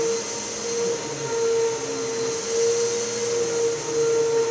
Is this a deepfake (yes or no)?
no